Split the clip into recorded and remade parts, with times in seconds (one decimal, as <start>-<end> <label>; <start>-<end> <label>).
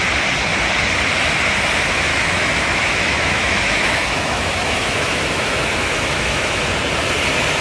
0.0-2.1 recorded; 2.1-6.7 remade; 6.7-7.6 recorded